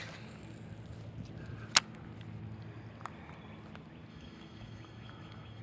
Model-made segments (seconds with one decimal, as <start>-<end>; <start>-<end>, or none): 4.1-5.6